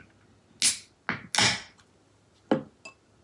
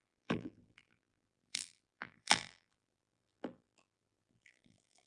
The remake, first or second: second